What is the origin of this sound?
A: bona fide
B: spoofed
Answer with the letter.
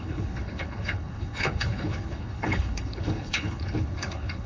B